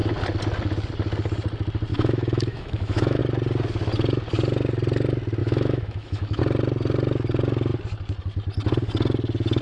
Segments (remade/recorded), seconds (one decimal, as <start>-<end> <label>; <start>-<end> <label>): 0.0-1.9 recorded; 1.9-3.2 remade; 3.2-5.4 recorded; 5.4-6.4 remade; 6.4-9.6 recorded